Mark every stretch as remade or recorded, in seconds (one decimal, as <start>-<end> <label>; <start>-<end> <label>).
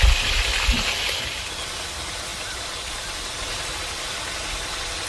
0.0-5.1 recorded